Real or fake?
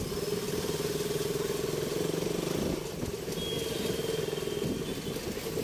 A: real